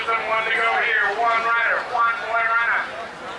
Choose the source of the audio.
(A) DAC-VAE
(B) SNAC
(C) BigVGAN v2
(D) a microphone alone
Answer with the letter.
D